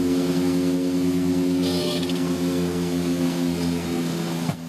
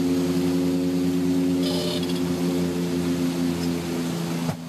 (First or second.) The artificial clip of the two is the first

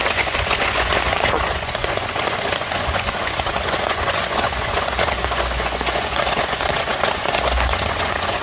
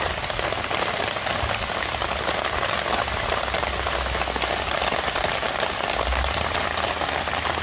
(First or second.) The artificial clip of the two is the first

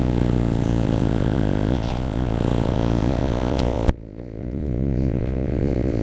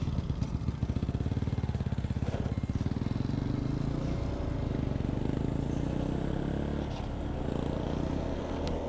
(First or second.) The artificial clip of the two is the first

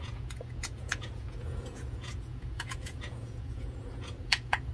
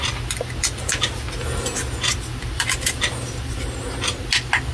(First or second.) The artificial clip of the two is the first